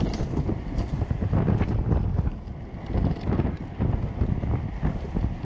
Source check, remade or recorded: recorded